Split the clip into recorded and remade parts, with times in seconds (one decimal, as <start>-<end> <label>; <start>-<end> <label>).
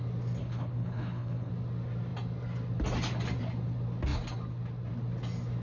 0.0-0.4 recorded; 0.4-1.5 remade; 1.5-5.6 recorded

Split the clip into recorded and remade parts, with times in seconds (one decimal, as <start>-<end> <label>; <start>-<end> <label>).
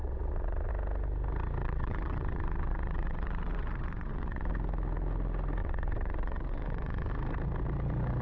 0.0-0.7 remade; 0.7-1.6 recorded; 1.6-4.5 remade; 4.5-5.6 recorded; 5.6-7.1 remade; 7.1-8.2 recorded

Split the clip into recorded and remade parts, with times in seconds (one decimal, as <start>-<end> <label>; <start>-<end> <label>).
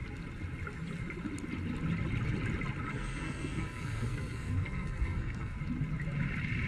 0.0-2.9 recorded; 2.9-5.6 remade; 5.6-6.7 recorded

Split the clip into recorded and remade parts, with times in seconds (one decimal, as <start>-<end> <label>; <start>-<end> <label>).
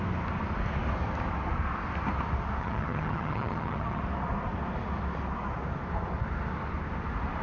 0.0-2.6 recorded; 2.6-4.0 remade; 4.0-7.4 recorded